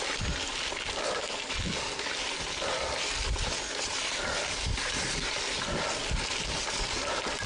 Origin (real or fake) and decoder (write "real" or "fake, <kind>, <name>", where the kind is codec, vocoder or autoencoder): real